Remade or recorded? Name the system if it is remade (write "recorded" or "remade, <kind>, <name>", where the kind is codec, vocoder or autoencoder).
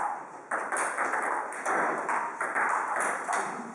recorded